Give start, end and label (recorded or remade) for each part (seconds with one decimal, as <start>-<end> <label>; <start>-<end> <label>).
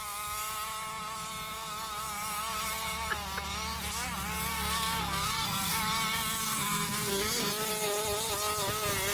0.0-4.5 recorded; 4.5-5.8 remade; 5.8-6.4 recorded; 6.4-7.5 remade; 7.5-9.1 recorded